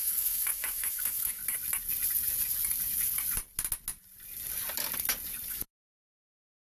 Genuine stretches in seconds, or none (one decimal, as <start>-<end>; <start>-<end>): 1.4-5.5